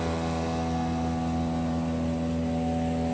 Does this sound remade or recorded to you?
recorded